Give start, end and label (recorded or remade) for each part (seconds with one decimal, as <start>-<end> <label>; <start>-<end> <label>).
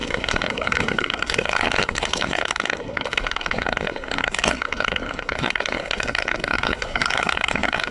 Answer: 0.0-7.9 remade